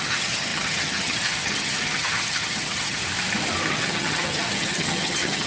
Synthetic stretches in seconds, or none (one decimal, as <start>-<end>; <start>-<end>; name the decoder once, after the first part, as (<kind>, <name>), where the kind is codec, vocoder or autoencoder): 0.0-3.0 (vocoder, HiFi-GAN); 3.7-5.5

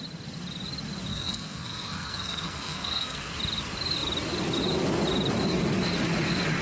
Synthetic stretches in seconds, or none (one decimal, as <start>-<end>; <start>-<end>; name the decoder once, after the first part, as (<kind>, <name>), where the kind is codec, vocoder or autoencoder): 1.1-3.3 (codec, SNAC)

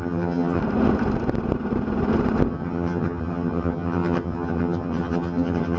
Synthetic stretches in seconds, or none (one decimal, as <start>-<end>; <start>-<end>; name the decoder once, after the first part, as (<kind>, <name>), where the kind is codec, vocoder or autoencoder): 0.0-0.6 (vocoder, HiFi-GAN); 2.5-5.8